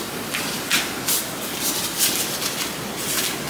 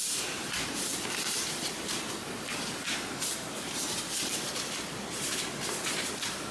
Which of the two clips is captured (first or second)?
first